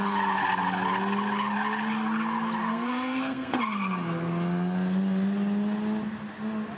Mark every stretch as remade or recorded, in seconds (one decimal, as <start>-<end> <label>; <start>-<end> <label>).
0.0-2.6 recorded; 2.6-3.6 remade; 3.6-6.8 recorded